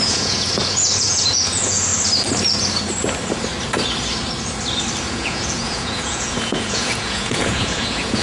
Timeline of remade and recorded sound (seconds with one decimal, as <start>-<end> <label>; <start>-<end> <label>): 0.0-1.9 remade; 1.9-5.1 recorded; 5.1-8.2 remade